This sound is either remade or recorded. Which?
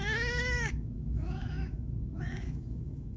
remade